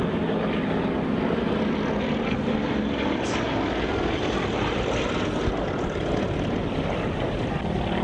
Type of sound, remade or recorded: recorded